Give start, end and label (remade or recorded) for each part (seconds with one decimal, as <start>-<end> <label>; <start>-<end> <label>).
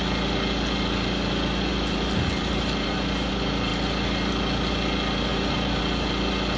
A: 0.0-1.7 recorded; 1.7-3.3 remade; 3.3-5.3 recorded; 5.3-5.8 remade; 5.8-6.6 recorded